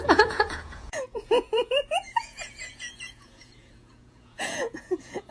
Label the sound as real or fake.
fake